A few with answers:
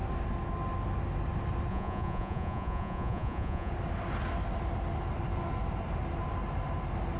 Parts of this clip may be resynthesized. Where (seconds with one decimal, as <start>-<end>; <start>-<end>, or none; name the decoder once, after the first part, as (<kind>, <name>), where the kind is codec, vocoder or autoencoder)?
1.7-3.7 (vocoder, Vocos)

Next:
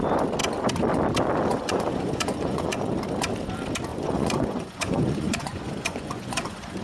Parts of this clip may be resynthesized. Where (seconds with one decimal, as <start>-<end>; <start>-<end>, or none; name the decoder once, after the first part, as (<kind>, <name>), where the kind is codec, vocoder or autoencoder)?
1.5-2.9 (vocoder, Vocos); 3.9-6.8

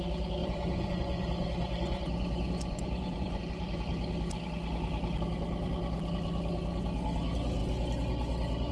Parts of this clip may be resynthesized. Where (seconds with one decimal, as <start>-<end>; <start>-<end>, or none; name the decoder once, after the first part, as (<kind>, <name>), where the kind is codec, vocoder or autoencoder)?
0.4-3.4 (vocoder, Vocos)

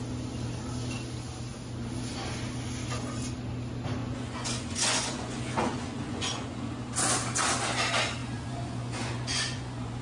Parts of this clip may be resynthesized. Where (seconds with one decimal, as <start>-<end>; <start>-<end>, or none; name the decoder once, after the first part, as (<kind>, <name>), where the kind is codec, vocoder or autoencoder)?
4.0-6.7 (vocoder, Vocos); 8.2-10.0

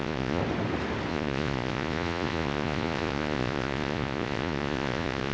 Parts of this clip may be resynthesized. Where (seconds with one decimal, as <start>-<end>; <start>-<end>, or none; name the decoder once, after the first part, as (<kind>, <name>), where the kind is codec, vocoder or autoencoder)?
0.0-0.4 (vocoder, Vocos); 1.1-5.3

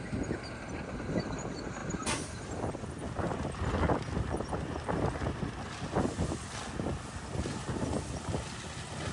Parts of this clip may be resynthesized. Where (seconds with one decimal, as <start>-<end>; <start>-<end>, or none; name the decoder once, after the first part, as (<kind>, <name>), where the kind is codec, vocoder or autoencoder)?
none

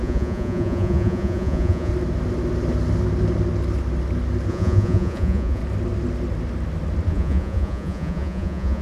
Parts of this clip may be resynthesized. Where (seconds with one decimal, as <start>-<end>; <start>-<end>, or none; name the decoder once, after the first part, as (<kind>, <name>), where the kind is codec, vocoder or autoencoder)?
0.0-1.9 (vocoder, Vocos); 4.5-5.6; 7.1-8.8